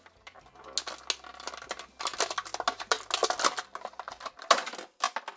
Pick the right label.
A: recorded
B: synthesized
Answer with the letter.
A